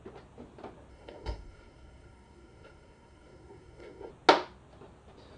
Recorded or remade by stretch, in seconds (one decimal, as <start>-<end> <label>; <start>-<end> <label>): 0.0-0.9 recorded; 0.9-4.1 remade; 4.1-5.4 recorded